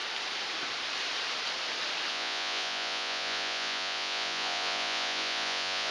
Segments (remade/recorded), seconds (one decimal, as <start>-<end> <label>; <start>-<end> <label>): 0.0-2.1 recorded; 2.1-5.9 remade